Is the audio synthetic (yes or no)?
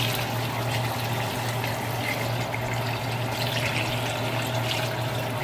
no